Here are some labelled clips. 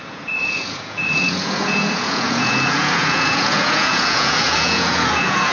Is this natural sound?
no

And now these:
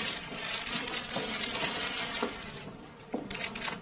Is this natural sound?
yes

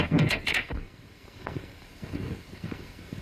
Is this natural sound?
no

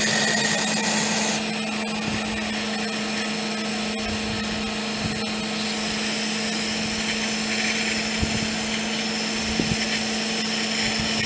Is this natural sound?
yes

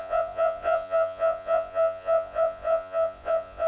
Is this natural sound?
no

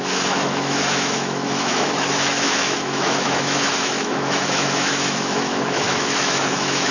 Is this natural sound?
no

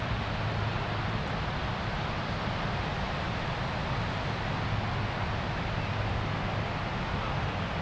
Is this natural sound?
yes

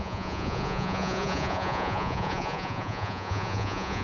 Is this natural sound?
no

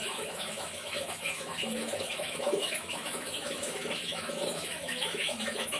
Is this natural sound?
no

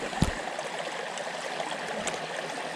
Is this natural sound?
yes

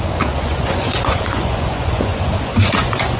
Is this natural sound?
no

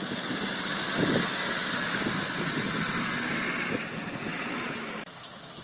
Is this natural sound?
yes